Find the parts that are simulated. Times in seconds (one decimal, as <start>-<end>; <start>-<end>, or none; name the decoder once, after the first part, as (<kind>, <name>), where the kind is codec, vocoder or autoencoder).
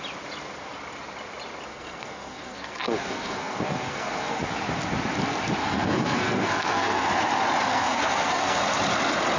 1.7-4.4 (codec, SNAC); 5.6-7.1; 7.7-8.6